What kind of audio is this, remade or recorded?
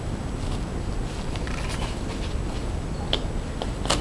recorded